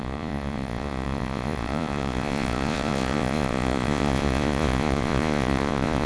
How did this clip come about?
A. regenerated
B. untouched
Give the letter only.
A